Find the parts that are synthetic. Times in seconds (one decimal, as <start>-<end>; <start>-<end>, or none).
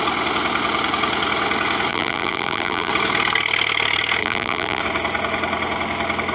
1.9-2.9; 4.2-4.8